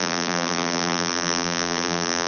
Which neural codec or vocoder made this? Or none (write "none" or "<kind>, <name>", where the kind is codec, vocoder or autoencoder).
vocoder, BigVGAN v2